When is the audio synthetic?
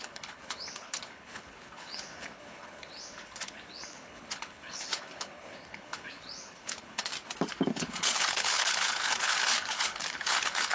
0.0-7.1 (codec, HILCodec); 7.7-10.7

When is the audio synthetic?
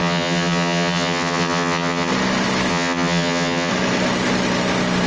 0.0-2.1 (vocoder, HiFi-GAN); 2.7-3.7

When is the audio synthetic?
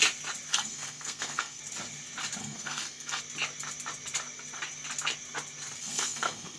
0.5-1.6 (codec, SNAC); 2.4-3.2; 5.8-6.6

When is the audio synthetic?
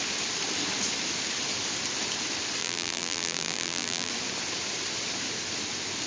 2.6-4.1 (vocoder, BigVGAN v2)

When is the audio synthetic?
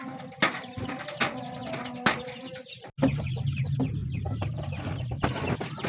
none